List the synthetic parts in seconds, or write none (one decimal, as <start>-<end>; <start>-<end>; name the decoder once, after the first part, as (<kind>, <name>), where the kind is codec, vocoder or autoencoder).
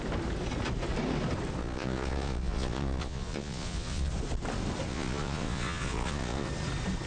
1.6-4.1 (vocoder, Vocos); 4.9-6.5